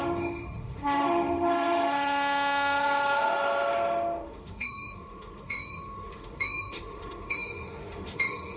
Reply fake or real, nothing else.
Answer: fake